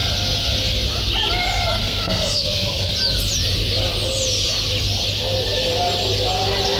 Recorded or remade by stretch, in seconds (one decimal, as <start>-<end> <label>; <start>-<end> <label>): 0.0-1.8 recorded; 1.8-2.9 remade; 2.9-6.8 recorded